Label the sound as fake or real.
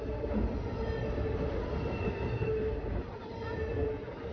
real